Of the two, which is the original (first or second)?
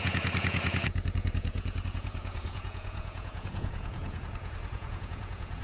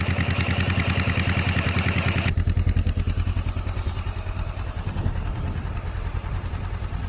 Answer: second